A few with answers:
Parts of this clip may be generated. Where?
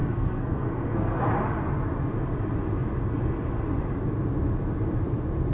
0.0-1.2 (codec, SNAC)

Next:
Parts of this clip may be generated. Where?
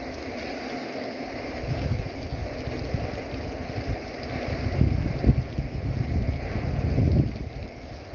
0.8-2.0 (autoencoder, DAC-VAE)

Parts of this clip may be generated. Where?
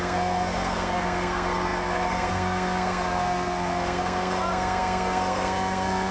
0.0-6.1 (codec, SNAC)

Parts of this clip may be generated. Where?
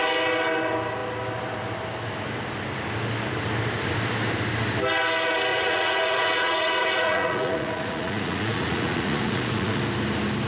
5.5-9.8 (vocoder, Vocos)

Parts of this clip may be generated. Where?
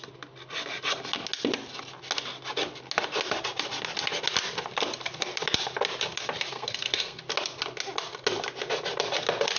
6.5-7.2 (codec, SNAC)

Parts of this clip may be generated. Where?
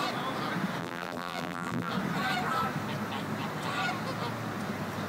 0.8-1.9 (vocoder, BigVGAN v2)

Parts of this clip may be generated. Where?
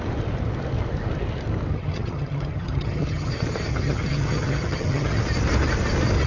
1.7-3.3 (vocoder, HiFi-GAN); 3.7-5.2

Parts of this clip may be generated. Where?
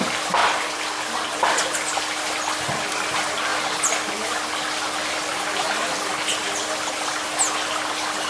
none